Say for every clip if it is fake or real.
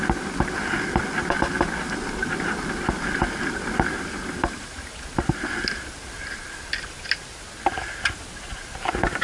real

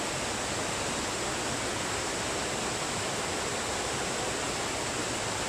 real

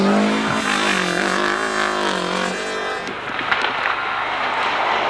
real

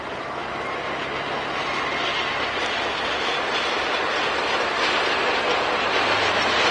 real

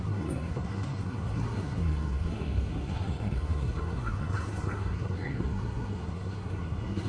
fake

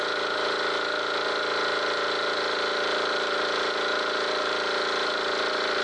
real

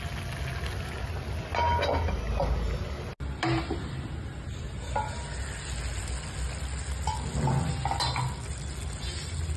real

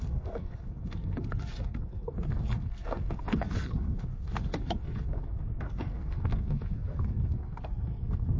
fake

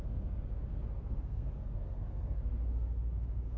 fake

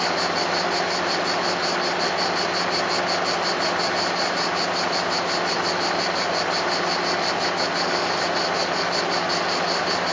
real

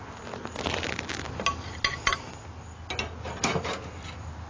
real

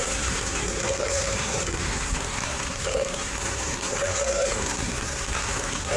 fake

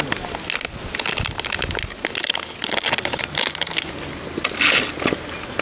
real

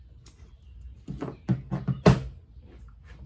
real